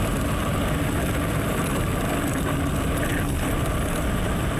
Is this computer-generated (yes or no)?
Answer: no